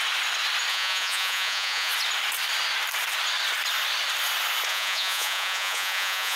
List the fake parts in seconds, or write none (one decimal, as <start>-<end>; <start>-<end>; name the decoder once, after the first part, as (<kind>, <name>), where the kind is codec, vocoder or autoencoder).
0.7-1.9 (vocoder, Vocos); 4.7-6.4